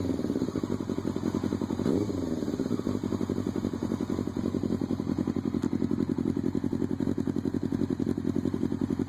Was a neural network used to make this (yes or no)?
no